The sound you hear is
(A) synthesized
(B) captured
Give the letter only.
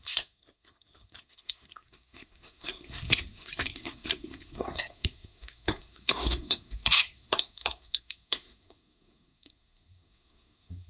A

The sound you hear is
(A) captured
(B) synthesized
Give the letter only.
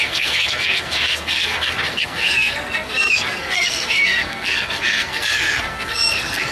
B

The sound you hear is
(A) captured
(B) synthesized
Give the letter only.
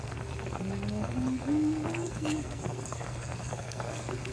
B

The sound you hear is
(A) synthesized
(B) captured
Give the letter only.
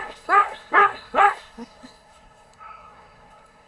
A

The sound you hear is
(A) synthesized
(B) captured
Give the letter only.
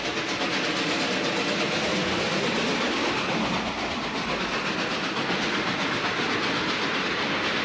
B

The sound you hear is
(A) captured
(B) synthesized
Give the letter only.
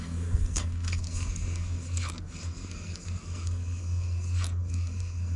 B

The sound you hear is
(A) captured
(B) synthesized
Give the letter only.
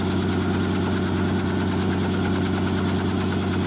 A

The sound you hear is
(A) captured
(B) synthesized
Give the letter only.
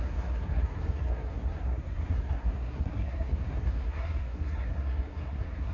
B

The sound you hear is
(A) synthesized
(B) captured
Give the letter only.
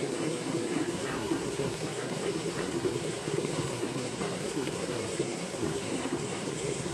A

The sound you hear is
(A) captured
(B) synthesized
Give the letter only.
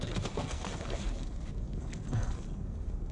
B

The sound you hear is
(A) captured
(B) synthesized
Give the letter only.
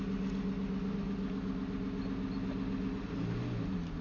A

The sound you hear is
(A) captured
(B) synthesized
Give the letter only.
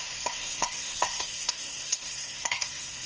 B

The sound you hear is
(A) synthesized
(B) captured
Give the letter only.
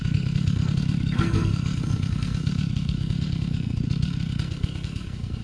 A